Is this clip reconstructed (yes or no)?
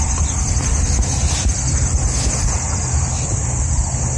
no